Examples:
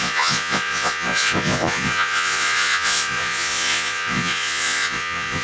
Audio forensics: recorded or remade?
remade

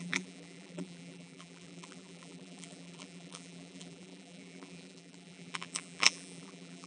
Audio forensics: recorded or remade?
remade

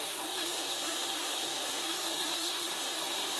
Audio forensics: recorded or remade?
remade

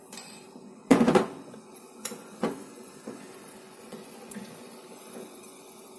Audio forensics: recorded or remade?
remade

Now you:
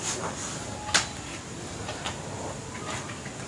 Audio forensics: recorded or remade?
recorded